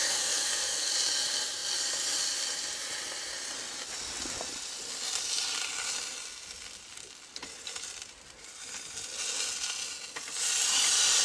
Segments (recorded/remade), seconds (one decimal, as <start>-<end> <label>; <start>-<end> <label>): 0.0-0.9 remade; 0.9-11.2 recorded

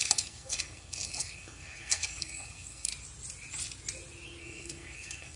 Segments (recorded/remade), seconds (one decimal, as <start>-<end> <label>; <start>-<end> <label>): 0.0-2.9 remade; 2.9-4.4 recorded; 4.4-5.4 remade